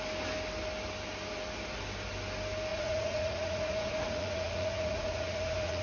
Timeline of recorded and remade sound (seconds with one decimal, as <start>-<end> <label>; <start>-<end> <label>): 0.0-2.7 recorded; 2.7-5.8 remade